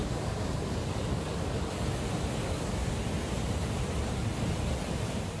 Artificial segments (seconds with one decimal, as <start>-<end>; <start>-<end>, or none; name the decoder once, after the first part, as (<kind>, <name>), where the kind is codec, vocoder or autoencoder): 0.0-1.6 (codec, DAC); 2.4-2.9